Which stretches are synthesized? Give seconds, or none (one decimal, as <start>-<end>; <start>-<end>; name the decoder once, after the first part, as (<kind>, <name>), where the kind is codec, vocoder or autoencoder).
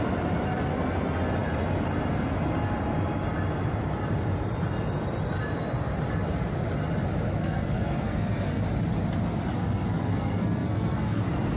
7.4-8.6 (codec, SNAC); 9.6-11.2